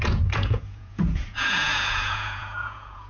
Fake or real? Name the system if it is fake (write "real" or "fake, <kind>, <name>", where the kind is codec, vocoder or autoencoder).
fake, vocoder, Vocos